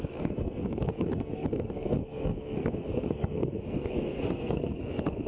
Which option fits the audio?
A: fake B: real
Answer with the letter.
A